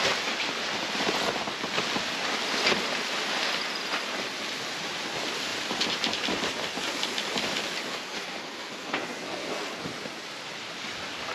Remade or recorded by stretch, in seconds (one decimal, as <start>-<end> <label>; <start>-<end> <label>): 0.0-7.9 recorded; 7.9-9.8 remade; 9.8-11.3 recorded